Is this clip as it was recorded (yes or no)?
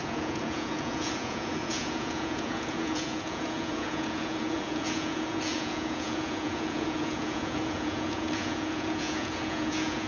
no